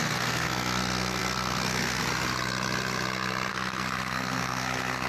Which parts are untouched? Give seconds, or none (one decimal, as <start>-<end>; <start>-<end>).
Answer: 2.0-3.5